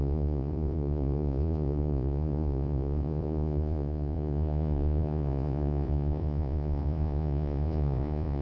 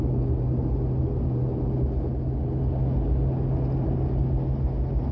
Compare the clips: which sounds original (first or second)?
second